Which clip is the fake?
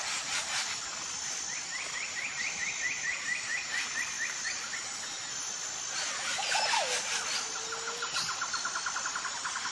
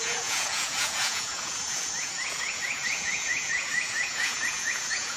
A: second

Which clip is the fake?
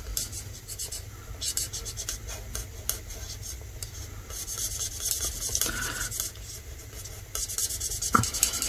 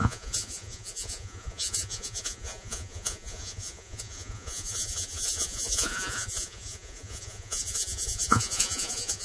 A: second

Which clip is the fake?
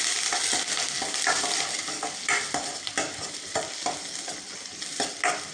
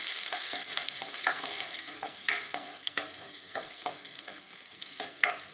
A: second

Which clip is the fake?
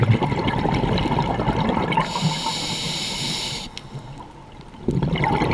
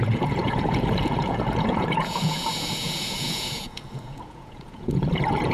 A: second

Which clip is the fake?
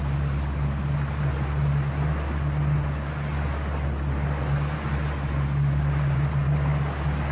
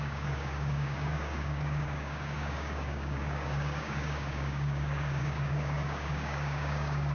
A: second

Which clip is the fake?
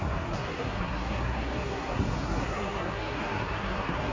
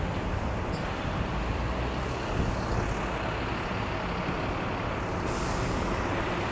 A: first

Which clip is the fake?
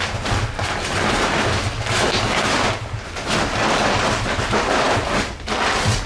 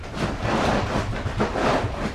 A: second